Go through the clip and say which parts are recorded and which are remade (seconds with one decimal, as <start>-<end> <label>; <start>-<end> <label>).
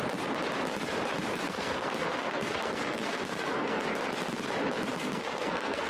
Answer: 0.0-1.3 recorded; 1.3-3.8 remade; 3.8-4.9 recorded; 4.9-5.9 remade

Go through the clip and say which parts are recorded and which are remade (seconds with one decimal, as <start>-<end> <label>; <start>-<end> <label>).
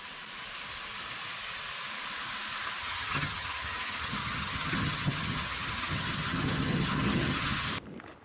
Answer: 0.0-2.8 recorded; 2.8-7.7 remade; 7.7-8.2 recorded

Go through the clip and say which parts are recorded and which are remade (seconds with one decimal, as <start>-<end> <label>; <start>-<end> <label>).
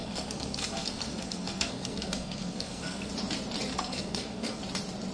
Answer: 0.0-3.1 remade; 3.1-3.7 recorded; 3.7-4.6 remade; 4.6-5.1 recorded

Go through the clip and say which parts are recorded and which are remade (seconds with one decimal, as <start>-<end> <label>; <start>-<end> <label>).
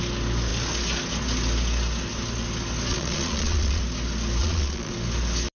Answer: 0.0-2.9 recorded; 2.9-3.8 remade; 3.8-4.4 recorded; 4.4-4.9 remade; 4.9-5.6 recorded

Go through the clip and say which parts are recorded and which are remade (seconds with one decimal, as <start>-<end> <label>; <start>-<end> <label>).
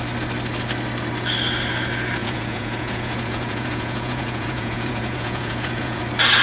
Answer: 0.0-2.2 recorded; 2.2-6.0 remade; 6.0-6.4 recorded